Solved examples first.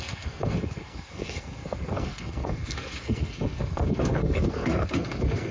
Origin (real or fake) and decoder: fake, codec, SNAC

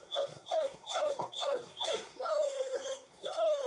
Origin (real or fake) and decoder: fake, codec, SNAC